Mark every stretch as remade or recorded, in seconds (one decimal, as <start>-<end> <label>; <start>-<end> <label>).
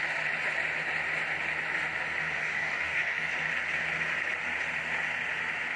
0.0-2.4 recorded; 2.4-3.3 remade; 3.3-5.8 recorded